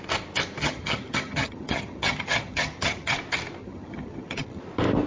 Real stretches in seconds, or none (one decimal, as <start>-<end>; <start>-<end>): 0.0-0.6; 3.1-3.6; 4.6-5.1